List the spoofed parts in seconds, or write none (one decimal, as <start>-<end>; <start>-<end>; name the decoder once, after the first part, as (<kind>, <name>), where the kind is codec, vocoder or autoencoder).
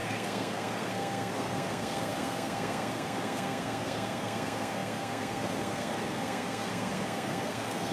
0.0-7.9 (codec, SNAC)